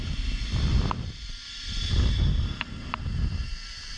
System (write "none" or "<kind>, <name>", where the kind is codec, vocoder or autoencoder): none